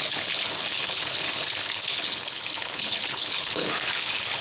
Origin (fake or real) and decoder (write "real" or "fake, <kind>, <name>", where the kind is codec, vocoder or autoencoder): fake, codec, HILCodec